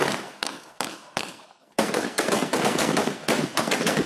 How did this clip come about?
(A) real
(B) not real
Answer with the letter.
B